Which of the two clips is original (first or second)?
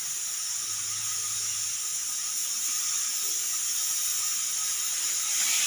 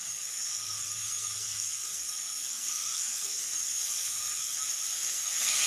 first